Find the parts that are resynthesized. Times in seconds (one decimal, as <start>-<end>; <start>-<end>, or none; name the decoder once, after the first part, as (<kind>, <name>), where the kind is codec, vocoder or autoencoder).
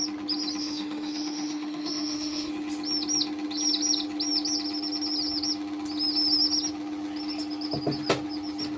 0.6-2.5 (autoencoder, DAC-VAE)